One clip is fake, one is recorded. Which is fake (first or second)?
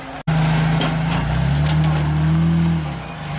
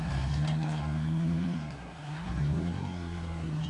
second